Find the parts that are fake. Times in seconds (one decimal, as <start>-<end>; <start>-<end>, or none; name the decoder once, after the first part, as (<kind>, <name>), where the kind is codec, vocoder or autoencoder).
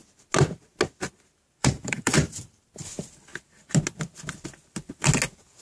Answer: 1.6-2.7 (vocoder, BigVGAN v2)